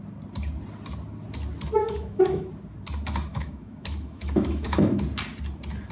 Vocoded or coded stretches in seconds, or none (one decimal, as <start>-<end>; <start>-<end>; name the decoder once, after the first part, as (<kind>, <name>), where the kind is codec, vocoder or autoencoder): 1.8-2.5 (autoencoder, DAC-VAE); 3.3-5.0